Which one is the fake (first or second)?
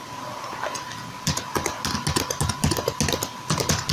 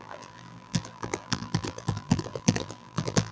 second